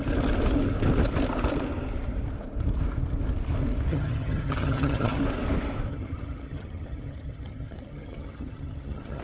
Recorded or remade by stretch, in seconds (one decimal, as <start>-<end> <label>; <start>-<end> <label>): 0.0-3.9 recorded; 3.9-5.2 remade; 5.2-5.9 recorded; 5.9-9.2 remade